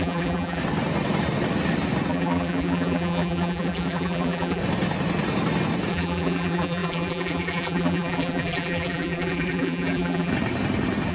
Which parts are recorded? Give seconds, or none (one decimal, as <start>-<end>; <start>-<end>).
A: 0.6-2.1; 4.6-5.9; 10.3-11.1